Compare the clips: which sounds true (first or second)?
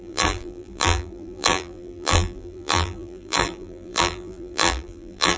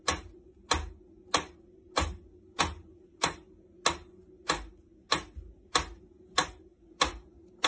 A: second